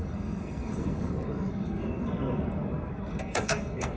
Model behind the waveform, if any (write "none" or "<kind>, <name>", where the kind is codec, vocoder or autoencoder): codec, SNAC